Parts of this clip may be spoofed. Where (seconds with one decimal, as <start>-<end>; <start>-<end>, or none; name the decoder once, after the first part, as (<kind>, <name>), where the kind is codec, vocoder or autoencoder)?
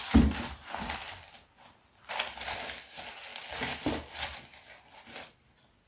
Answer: none